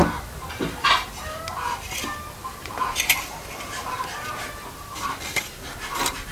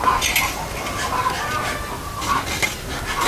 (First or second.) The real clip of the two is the second